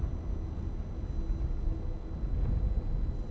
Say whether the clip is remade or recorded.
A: recorded